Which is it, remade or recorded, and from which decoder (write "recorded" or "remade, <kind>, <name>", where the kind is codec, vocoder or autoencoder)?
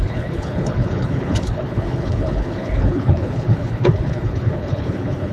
remade, codec, HILCodec